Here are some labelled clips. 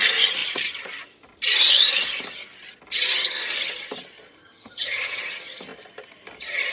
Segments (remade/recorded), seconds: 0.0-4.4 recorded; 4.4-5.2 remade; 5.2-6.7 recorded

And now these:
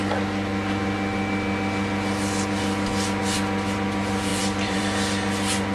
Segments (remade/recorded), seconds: 0.0-4.3 recorded; 4.3-4.8 remade; 4.8-5.7 recorded

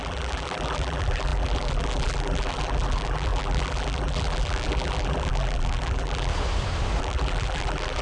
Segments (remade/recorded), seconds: 0.0-6.3 remade; 6.3-7.0 recorded; 7.0-8.0 remade

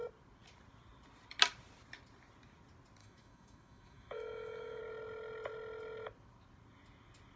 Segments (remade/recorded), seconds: 0.0-3.0 recorded; 3.0-4.8 remade; 4.8-7.4 recorded

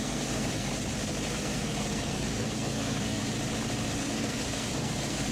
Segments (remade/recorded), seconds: 0.0-0.7 remade; 0.7-1.3 recorded; 1.3-3.2 remade; 3.2-4.0 recorded; 4.0-5.3 remade

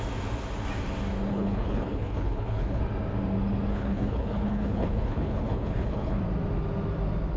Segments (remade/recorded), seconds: 0.0-1.3 recorded; 1.3-2.8 remade; 2.8-3.7 recorded; 3.7-6.2 remade; 6.2-7.4 recorded

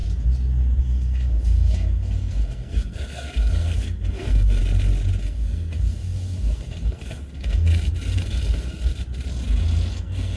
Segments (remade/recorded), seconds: 0.0-0.8 recorded; 0.8-4.6 remade; 4.6-5.2 recorded; 5.2-8.9 remade; 8.9-9.9 recorded; 9.9-10.4 remade